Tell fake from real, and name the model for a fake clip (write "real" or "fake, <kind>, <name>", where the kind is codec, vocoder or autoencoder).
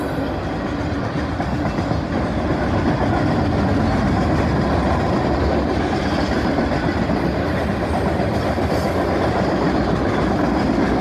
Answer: real